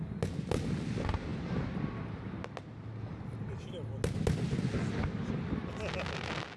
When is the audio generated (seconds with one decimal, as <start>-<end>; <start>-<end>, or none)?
none